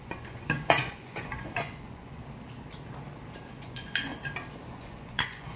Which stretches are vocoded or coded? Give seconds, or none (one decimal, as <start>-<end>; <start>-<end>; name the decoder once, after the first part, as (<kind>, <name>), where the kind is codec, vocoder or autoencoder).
0.0-2.2 (vocoder, Vocos); 3.5-4.1; 4.7-5.6